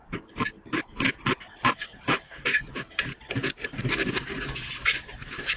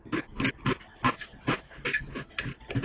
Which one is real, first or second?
second